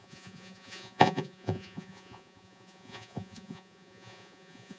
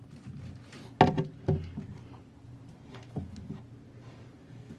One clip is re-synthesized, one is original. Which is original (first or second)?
second